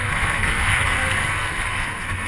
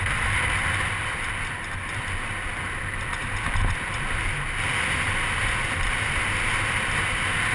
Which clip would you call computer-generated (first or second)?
first